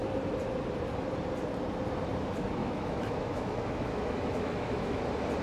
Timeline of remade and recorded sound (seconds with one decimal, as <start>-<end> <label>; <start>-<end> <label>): 0.0-2.6 recorded; 2.6-5.0 remade; 5.0-5.4 recorded

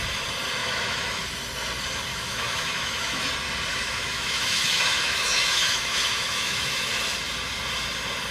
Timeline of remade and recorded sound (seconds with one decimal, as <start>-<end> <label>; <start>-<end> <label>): 0.0-0.6 recorded; 0.6-1.2 remade; 1.2-2.1 recorded; 2.1-3.3 remade; 3.3-3.7 recorded; 3.7-6.9 remade; 6.9-8.3 recorded

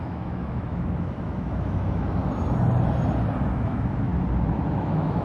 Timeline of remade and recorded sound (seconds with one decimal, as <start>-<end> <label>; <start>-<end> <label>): 0.0-2.2 remade; 2.2-3.5 recorded; 3.5-4.1 remade; 4.1-4.7 recorded; 4.7-5.2 remade

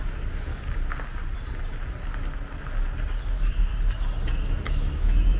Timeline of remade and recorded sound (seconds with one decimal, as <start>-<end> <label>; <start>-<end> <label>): 0.0-0.5 remade; 0.5-3.3 recorded; 3.3-3.7 remade; 3.7-4.5 recorded; 4.5-5.4 remade

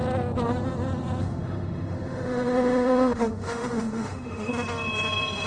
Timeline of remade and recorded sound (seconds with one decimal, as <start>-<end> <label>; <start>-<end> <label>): 0.0-1.2 recorded; 1.2-4.5 remade; 4.5-5.5 recorded

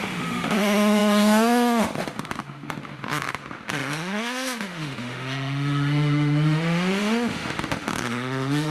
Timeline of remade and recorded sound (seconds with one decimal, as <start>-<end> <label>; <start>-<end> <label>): 0.0-8.7 remade